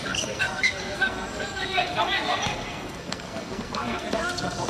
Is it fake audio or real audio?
fake